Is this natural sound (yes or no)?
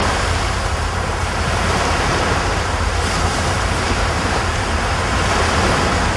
no